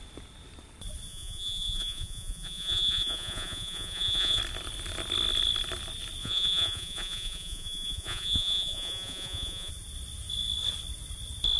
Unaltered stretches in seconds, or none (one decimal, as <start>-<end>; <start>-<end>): 0.0-1.1; 4.4-6.2; 9.7-11.6